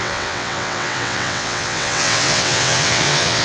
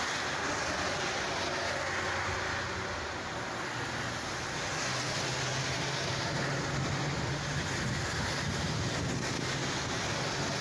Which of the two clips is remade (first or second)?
first